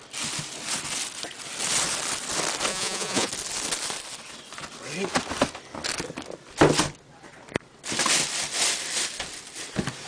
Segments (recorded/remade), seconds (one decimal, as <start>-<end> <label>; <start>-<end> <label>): 0.0-2.7 recorded; 2.7-3.3 remade; 3.3-10.1 recorded